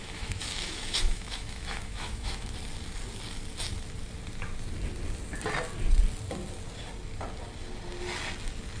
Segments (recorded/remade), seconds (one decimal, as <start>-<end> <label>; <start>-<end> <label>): 0.0-2.5 remade; 2.5-8.8 recorded